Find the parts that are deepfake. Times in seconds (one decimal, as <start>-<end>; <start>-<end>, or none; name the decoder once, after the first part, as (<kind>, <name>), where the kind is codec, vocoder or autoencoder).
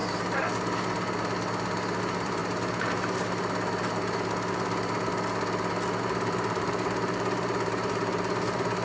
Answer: 2.0-2.4 (vocoder, BigVGAN v2); 6.0-8.8